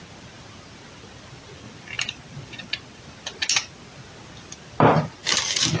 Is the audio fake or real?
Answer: real